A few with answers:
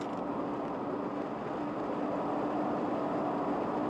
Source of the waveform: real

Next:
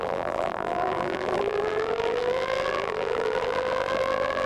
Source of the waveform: fake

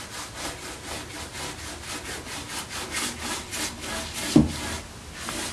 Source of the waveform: real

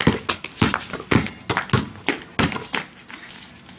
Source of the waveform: real